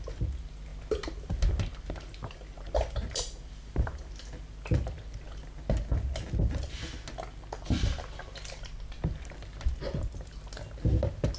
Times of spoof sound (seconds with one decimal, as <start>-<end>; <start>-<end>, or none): 2.2-4.1